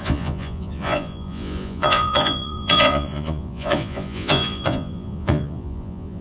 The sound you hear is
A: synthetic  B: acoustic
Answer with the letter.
A